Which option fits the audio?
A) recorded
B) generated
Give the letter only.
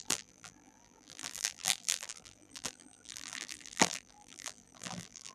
B